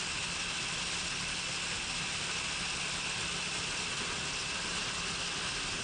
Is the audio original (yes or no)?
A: yes